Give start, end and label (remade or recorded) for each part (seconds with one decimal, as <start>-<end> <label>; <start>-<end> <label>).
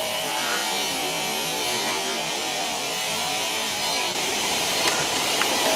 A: 0.0-0.6 remade; 0.6-2.3 recorded; 2.3-5.8 remade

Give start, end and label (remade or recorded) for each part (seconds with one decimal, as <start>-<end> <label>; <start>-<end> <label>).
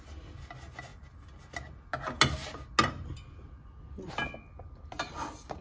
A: 0.0-5.6 recorded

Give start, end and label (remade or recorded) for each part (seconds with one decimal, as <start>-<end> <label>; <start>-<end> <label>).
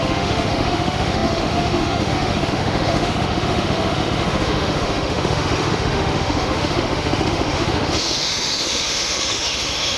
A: 0.0-10.0 remade